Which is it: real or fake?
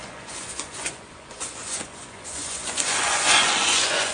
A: fake